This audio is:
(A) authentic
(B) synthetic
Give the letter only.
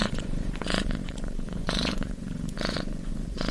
B